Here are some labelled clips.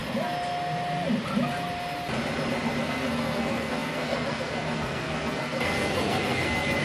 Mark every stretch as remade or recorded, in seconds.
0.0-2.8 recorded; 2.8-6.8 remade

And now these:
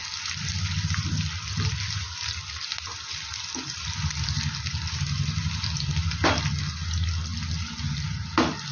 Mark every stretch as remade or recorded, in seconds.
0.0-8.7 recorded

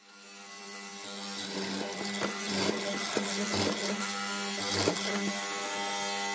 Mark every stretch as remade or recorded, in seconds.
0.0-6.3 recorded